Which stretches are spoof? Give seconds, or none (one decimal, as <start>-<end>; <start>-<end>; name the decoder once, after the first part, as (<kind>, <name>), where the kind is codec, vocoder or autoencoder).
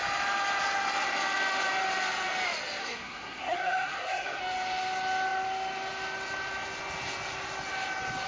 2.8-4.4 (codec, SNAC)